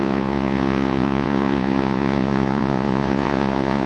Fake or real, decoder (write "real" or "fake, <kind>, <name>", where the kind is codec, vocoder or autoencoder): fake, vocoder, Vocos